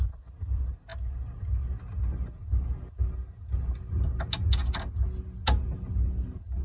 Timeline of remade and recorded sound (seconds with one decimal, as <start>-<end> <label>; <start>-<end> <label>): 0.0-6.6 recorded